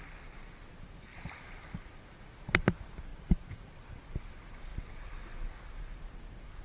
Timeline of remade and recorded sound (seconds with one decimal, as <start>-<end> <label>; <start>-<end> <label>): 0.0-3.1 recorded; 3.1-3.8 remade; 3.8-6.6 recorded